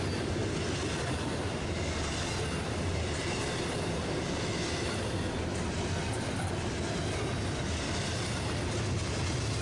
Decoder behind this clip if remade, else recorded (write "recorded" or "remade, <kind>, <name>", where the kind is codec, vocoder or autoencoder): recorded